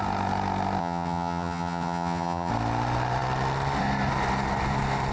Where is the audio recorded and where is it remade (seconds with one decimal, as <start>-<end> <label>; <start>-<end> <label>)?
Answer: 0.0-0.8 recorded; 0.8-2.5 remade; 2.5-5.1 recorded

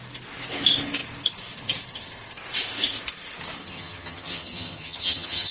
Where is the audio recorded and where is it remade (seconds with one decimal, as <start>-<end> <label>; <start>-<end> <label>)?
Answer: 0.0-3.6 recorded; 3.6-5.5 remade